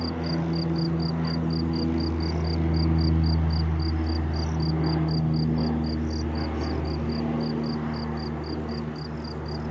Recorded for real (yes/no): yes